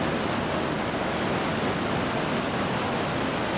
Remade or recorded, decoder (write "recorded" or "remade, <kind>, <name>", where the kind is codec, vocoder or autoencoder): recorded